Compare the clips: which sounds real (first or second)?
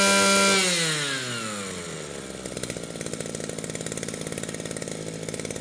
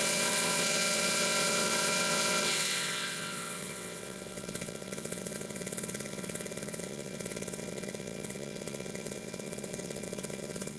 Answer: first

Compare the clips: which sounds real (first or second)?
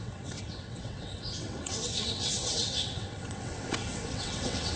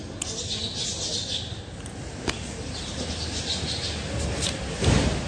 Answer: second